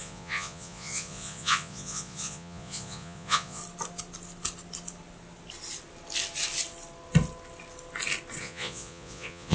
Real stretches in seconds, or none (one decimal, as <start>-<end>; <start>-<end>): 3.6-8.4